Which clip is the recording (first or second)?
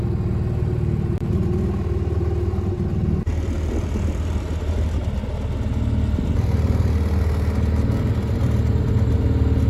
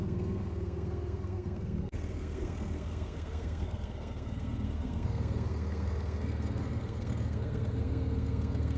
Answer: first